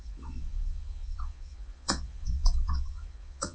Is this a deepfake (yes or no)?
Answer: yes